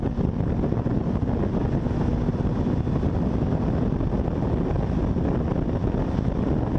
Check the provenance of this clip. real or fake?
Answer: real